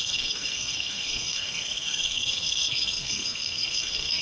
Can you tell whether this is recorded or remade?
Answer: remade